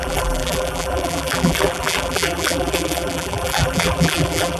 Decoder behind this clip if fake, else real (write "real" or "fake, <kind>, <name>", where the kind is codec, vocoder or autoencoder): fake, vocoder, BigVGAN v2